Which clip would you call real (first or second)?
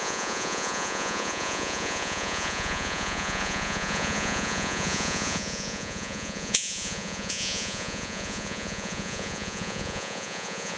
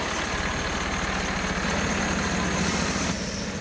second